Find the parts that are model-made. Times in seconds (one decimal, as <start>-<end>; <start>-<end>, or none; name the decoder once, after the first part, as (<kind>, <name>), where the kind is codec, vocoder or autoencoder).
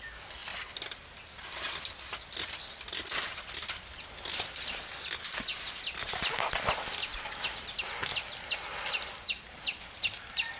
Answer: 0.4-2.8 (vocoder, BigVGAN v2); 7.1-7.9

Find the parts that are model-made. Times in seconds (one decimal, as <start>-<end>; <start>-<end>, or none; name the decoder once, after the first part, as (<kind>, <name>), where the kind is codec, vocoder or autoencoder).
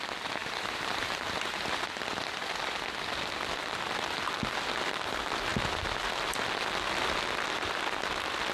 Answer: 0.4-1.8 (vocoder, BigVGAN v2)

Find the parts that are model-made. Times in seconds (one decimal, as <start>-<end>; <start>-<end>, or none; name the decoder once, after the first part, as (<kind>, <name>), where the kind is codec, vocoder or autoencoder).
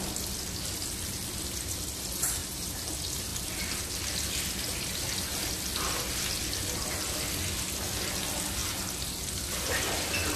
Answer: 2.4-2.9 (vocoder, BigVGAN v2)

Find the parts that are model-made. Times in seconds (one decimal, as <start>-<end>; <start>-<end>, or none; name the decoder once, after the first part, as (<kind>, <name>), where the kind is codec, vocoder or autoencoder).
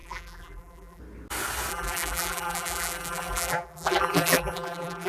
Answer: 0.0-1.0 (vocoder, BigVGAN v2); 1.7-5.1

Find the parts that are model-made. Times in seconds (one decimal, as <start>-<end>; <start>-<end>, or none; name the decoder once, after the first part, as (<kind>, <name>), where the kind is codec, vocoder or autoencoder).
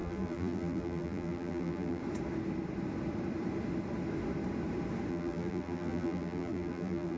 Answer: 0.0-2.0 (vocoder, BigVGAN v2); 5.1-7.2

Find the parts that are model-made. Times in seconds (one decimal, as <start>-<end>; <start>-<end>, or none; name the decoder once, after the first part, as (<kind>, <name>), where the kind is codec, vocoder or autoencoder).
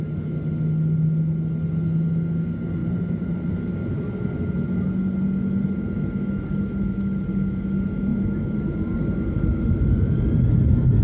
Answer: 2.8-3.5 (vocoder, BigVGAN v2)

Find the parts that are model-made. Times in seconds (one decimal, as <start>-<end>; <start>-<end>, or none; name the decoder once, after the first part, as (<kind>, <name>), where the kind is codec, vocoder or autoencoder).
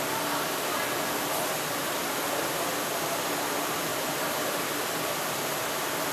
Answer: 3.9-5.1 (vocoder, BigVGAN v2)